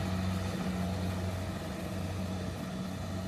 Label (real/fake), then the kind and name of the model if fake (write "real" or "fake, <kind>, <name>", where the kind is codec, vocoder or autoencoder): real